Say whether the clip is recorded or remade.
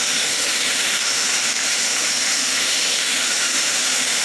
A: remade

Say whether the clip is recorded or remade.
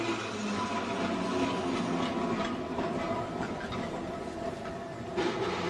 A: recorded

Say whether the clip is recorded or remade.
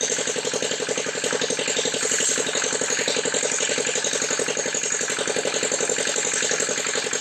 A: recorded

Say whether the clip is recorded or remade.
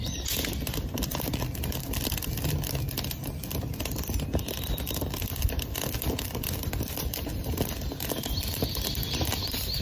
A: recorded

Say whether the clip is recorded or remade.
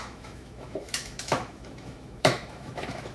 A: remade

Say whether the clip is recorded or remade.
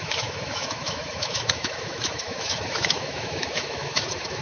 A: remade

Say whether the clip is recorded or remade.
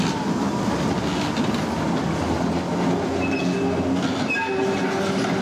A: recorded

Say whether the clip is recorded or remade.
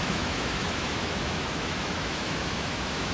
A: remade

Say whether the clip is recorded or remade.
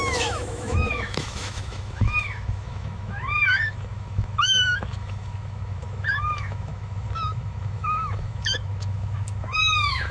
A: remade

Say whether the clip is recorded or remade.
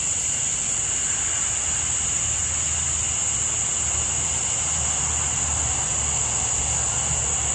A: recorded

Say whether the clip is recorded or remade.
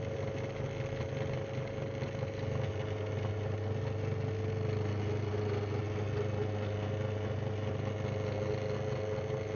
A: recorded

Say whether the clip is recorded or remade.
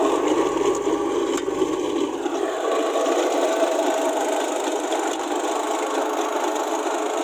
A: recorded